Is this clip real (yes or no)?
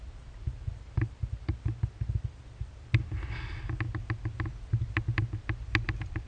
yes